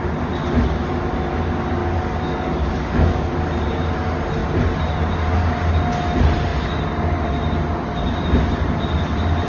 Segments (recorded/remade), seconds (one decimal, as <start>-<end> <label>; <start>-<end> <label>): 0.0-1.8 recorded; 1.8-3.3 remade; 3.3-9.5 recorded